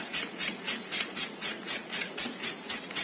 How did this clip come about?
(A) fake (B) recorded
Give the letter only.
A